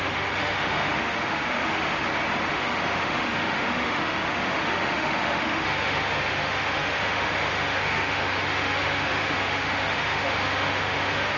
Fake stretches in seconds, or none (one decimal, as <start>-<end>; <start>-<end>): 0.0-2.0; 2.5-11.4